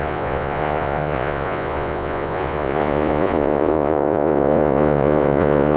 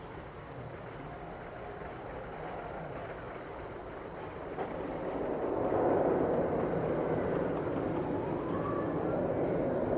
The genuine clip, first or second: second